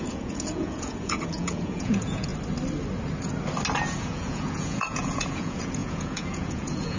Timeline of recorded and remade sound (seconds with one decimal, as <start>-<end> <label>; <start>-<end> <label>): 0.0-2.3 remade; 2.3-4.0 recorded; 4.0-7.0 remade